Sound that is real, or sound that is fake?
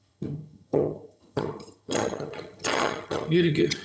fake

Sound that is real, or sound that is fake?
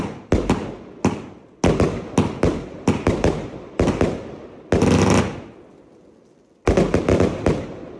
real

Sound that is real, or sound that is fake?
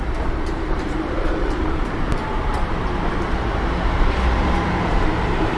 fake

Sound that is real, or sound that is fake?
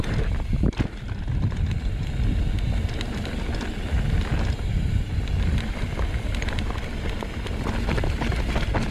real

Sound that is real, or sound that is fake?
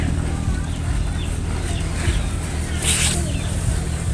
real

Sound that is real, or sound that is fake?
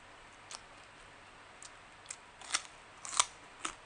real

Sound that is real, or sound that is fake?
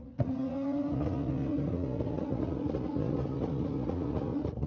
fake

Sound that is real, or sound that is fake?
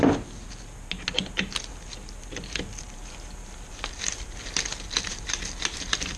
real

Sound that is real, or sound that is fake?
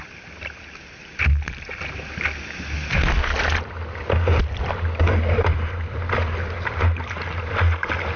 real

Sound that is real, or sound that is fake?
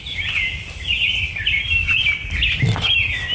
real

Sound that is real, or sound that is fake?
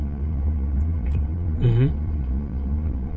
fake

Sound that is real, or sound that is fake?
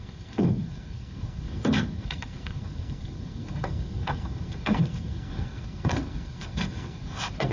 fake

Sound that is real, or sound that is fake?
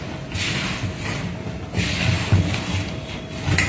real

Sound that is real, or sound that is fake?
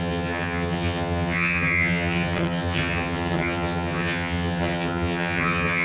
fake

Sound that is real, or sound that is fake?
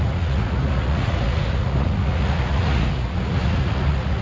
fake